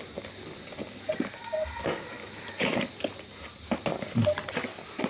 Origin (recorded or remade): recorded